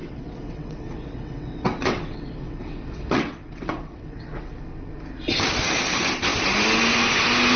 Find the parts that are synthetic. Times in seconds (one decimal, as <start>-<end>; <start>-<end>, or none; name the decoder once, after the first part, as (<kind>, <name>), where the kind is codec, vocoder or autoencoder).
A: 0.0-4.6 (vocoder, WaveNeXt)